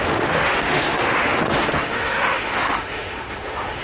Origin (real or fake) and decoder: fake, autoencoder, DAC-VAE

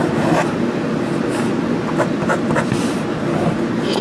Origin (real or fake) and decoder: real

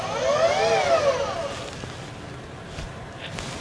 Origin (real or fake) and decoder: real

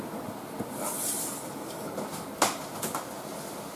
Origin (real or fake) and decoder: real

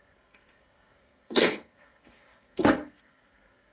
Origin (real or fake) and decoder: fake, codec, SNAC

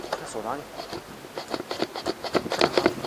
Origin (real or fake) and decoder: real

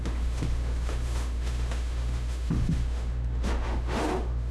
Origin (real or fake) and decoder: fake, autoencoder, DAC-VAE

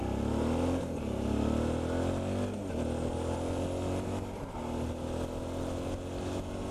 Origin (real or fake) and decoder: real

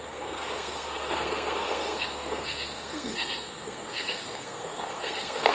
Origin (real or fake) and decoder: fake, codec, SNAC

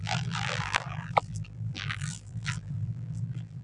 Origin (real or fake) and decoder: fake, vocoder, BigVGAN v2